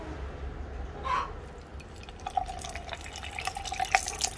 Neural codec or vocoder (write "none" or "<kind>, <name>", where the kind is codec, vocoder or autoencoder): none